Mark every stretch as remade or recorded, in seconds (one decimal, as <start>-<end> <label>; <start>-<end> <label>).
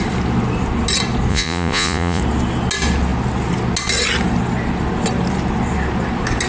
0.0-1.3 recorded; 1.3-2.2 remade; 2.2-6.5 recorded